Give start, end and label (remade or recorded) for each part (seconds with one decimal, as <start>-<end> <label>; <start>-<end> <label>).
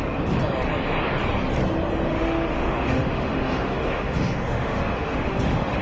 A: 0.0-2.1 recorded; 2.1-5.8 remade